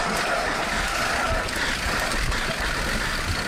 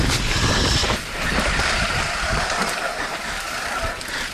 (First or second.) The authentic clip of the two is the first